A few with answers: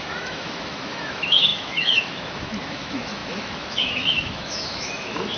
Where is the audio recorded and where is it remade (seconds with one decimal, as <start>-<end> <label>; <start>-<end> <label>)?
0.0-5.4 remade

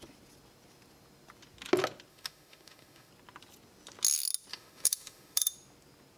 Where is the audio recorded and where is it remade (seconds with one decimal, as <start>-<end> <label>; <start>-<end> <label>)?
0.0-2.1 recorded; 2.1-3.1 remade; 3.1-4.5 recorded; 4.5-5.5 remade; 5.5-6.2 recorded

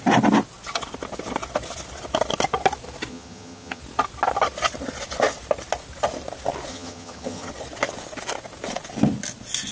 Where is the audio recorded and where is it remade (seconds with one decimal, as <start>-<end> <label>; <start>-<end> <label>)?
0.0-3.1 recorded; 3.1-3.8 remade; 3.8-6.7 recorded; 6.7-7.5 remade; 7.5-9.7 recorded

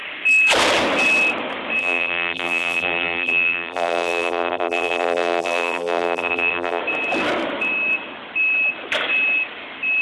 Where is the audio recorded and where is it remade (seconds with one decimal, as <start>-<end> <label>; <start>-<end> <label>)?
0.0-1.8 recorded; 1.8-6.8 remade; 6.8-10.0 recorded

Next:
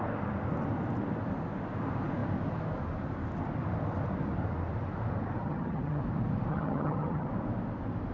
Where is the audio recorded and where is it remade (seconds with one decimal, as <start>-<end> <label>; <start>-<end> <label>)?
0.0-5.4 recorded; 5.4-6.0 remade; 6.0-6.5 recorded; 6.5-7.3 remade; 7.3-8.1 recorded